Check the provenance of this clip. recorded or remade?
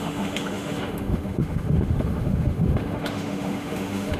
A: remade